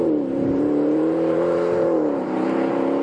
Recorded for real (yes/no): no